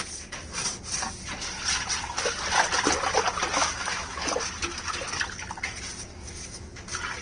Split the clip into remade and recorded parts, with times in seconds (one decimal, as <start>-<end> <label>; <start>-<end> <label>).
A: 0.0-3.6 recorded; 3.6-4.3 remade; 4.3-6.2 recorded; 6.2-6.8 remade; 6.8-7.2 recorded

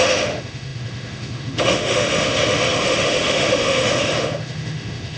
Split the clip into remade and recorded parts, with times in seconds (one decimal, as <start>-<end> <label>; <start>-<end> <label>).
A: 0.0-5.2 remade